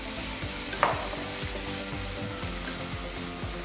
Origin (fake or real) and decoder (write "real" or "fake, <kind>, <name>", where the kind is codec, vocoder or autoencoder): real